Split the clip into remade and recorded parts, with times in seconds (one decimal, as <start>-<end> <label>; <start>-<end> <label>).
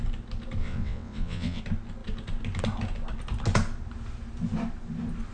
0.0-0.6 recorded; 0.6-1.6 remade; 1.6-5.3 recorded